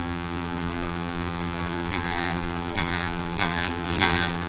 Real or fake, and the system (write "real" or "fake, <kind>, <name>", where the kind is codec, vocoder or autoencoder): fake, vocoder, BigVGAN v2